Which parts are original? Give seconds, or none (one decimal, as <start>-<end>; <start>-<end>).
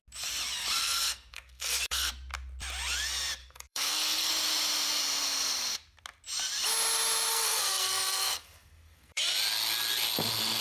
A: 0.0-0.8; 2.1-3.4; 4.3-7.3; 9.2-10.6